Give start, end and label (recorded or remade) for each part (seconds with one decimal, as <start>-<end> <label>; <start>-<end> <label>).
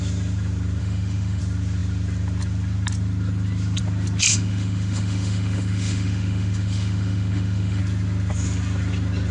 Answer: 0.0-0.8 recorded; 0.8-1.4 remade; 1.4-4.3 recorded; 4.3-7.8 remade; 7.8-9.3 recorded